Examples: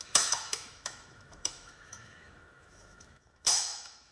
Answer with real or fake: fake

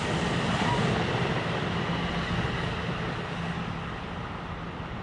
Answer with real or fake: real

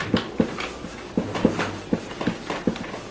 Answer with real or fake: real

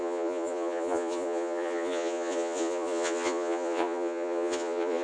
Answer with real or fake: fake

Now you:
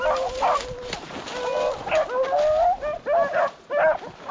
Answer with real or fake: real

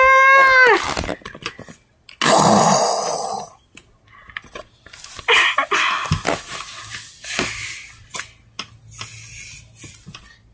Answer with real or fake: real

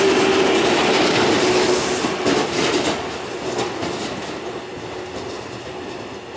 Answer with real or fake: real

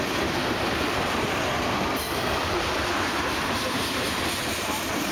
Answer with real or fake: real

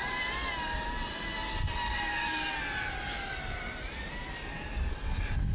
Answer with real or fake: real